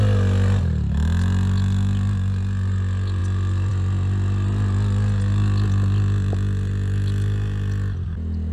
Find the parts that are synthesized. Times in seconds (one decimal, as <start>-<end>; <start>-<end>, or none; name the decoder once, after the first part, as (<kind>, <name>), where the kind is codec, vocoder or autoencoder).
none